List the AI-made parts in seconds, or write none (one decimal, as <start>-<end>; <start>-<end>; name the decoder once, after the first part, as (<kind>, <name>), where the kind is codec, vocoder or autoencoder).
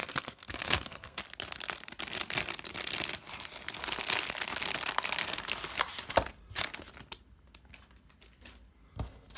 0.0-1.2 (codec, SNAC)